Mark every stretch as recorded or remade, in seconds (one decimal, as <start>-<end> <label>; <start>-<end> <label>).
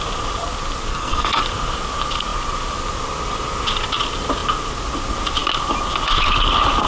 0.0-0.9 recorded; 0.9-1.4 remade; 1.4-6.9 recorded